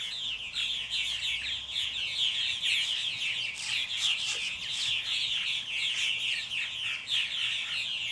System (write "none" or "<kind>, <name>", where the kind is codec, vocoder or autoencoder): none